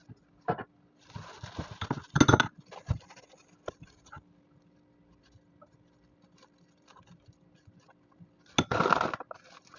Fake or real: real